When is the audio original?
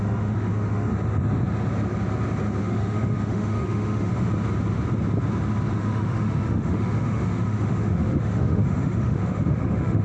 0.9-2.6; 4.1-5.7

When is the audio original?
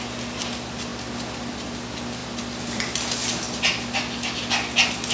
0.0-5.1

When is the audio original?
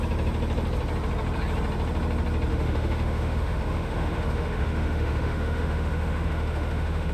0.0-2.5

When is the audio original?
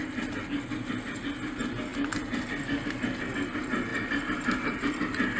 0.0-3.9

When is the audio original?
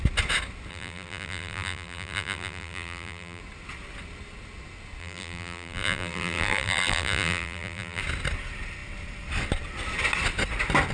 0.0-0.7; 3.4-5.0; 8.0-10.9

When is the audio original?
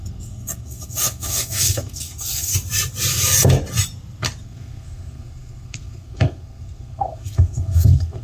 2.5-4.4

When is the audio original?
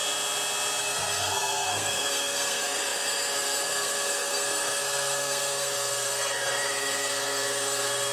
0.0-0.8